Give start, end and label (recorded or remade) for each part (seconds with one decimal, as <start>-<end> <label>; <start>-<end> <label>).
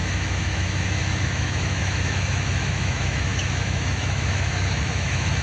0.0-5.4 remade